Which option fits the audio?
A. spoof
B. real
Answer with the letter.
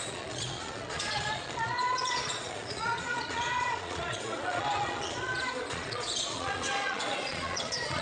A